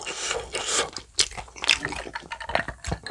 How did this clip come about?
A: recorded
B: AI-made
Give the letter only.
A